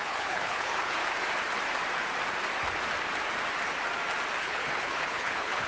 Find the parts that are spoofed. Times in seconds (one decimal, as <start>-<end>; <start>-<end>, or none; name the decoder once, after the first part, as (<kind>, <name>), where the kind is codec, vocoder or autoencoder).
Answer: 0.0-1.0 (codec, HILCodec); 4.4-5.7